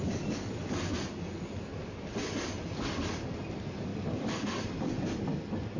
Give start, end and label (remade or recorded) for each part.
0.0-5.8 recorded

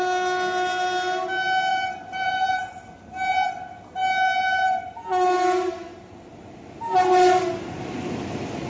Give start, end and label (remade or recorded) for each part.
0.0-1.7 recorded; 1.7-2.6 remade; 2.6-8.7 recorded

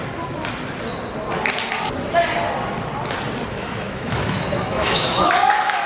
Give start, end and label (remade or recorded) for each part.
0.0-3.5 recorded; 3.5-5.9 remade

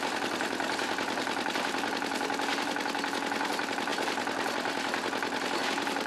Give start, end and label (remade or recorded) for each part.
0.0-2.5 remade; 2.5-3.5 recorded; 3.5-3.9 remade; 3.9-5.6 recorded; 5.6-6.1 remade